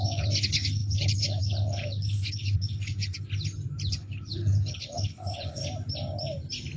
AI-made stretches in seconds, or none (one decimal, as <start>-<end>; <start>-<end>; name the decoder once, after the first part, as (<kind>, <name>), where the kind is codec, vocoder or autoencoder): 0.0-3.1 (codec, HILCodec); 3.9-5.6